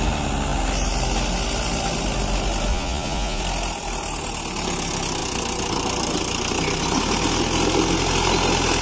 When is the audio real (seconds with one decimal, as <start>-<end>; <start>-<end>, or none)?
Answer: 0.0-2.7; 3.4-8.8